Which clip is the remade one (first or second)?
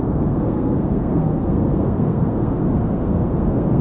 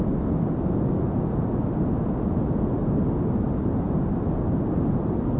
first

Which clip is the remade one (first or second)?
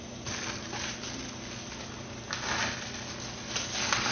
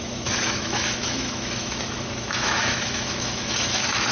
second